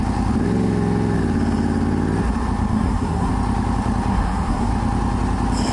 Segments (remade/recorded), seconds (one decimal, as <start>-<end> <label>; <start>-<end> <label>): 0.0-2.7 recorded; 2.7-3.3 remade; 3.3-4.1 recorded; 4.1-4.7 remade; 4.7-5.7 recorded